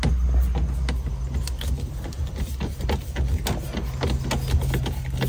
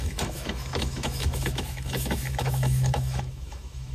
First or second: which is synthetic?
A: second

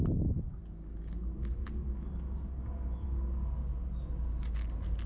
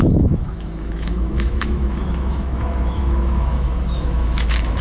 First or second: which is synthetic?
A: second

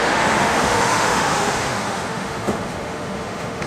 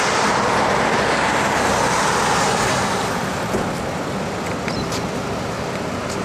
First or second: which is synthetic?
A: first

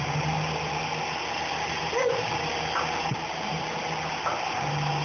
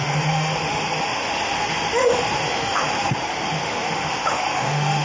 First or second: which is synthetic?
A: second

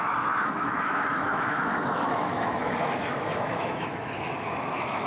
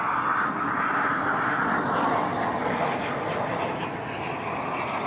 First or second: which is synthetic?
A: first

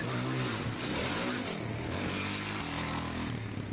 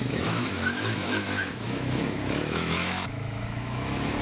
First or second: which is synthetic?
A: second